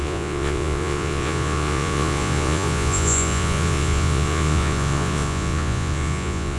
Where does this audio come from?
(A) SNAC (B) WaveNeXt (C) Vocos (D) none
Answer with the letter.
C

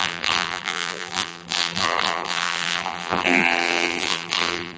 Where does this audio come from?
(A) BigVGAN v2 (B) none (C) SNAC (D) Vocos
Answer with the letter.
A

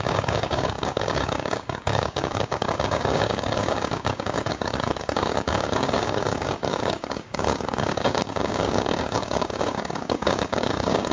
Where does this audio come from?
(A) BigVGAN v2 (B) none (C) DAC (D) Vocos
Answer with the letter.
C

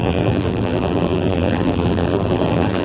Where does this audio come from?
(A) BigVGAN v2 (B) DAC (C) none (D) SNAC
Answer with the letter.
A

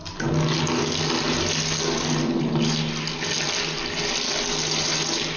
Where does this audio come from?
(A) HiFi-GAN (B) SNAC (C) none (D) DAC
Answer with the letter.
C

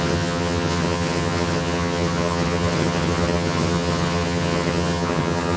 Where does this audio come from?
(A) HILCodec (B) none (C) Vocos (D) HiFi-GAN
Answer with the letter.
D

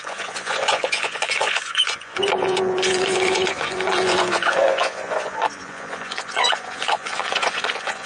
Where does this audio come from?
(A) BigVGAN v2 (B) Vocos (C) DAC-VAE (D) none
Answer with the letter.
B